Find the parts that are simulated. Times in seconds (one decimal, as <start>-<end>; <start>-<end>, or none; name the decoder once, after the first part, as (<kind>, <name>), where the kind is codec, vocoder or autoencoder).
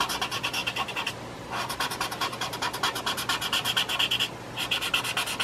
0.6-3.8 (vocoder, BigVGAN v2)